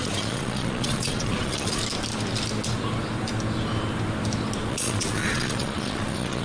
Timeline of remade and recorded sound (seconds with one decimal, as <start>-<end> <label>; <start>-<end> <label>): 0.0-1.8 remade; 1.8-4.7 recorded; 4.7-6.4 remade